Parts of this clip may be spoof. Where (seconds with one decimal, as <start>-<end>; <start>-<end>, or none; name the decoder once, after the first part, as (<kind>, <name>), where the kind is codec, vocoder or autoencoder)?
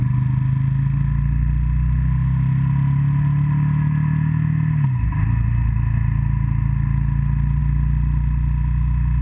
none